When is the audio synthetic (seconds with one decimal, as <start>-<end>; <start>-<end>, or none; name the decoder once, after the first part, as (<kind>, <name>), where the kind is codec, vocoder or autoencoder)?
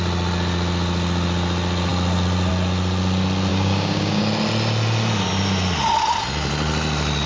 3.5-4.2 (codec, DAC)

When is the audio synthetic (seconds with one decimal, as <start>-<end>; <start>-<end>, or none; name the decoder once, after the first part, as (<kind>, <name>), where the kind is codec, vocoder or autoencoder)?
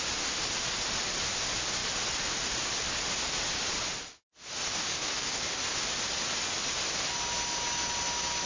4.7-5.6 (codec, DAC)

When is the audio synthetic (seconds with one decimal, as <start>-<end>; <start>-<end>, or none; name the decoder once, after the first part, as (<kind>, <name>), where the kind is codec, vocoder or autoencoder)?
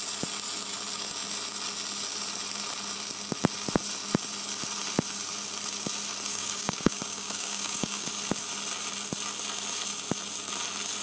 6.3-8.1 (codec, DAC)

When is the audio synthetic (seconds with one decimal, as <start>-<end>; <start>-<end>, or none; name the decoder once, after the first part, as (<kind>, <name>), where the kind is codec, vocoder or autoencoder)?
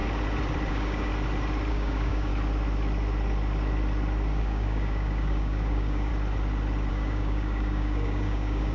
0.7-1.1 (codec, DAC); 1.7-2.3; 4.4-6.1; 6.9-8.7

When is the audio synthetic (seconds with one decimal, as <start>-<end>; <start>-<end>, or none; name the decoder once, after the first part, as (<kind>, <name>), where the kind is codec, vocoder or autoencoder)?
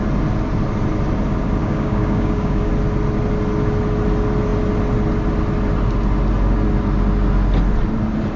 1.6-2.7 (codec, DAC)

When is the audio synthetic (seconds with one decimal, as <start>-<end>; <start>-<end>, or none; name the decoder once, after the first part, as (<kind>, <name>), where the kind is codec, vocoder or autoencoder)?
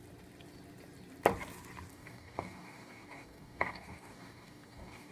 1.9-5.1 (codec, DAC)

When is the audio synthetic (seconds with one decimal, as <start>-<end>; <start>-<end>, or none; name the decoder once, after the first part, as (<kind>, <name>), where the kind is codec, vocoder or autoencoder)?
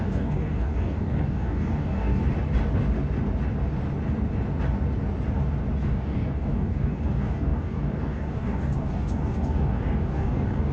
0.0-2.2 (codec, DAC); 5.8-10.7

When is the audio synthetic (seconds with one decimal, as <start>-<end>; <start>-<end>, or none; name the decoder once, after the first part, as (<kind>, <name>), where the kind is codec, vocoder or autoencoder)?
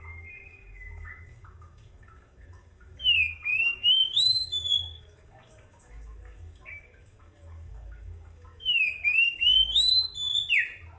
0.0-9.9 (codec, DAC)